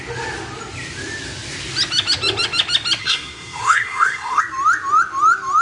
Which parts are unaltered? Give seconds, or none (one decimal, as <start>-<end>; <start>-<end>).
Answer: 0.0-3.0; 4.4-5.6